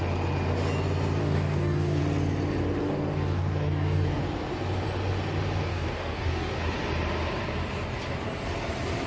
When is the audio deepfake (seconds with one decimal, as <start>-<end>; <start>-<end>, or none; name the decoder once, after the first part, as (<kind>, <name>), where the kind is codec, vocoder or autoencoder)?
1.2-2.0 (codec, DAC); 2.8-4.2; 5.7-6.6

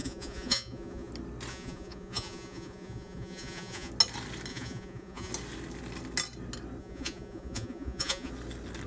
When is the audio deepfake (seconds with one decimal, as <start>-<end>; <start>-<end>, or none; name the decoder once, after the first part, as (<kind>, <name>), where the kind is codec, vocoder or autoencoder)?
0.0-1.1 (vocoder, Vocos); 1.5-3.9; 4.5-5.3; 6.8-8.3

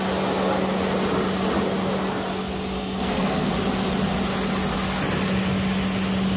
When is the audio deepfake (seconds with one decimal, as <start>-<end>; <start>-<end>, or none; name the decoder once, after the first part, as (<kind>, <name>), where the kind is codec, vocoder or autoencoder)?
2.8-3.5 (codec, SNAC)